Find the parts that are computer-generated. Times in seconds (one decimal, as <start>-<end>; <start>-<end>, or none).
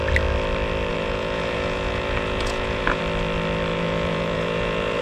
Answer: 0.9-3.0; 3.7-5.0